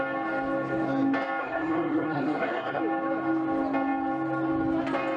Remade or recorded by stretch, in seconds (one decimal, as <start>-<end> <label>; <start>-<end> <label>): 0.0-1.4 recorded; 1.4-2.8 remade; 2.8-5.2 recorded